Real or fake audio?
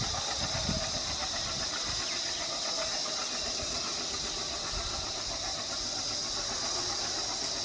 real